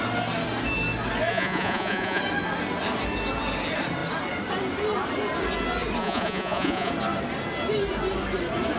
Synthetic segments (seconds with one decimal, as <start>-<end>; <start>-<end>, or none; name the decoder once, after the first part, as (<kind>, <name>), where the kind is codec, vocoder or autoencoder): 1.3-2.2 (vocoder, Vocos); 6.0-6.9